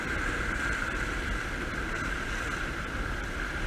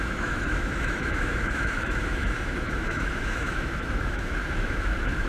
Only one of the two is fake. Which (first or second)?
second